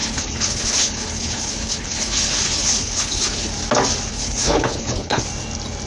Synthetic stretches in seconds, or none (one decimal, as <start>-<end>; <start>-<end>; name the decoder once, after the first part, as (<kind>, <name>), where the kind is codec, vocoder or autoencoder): 0.0-3.5 (codec, HILCodec); 4.1-5.2